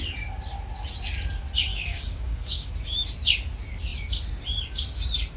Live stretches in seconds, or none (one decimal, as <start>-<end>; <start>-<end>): 0.0-1.7; 2.7-5.4